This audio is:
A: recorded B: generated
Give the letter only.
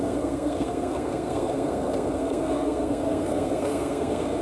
B